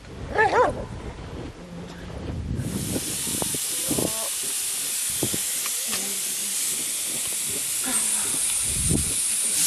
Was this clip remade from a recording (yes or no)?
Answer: no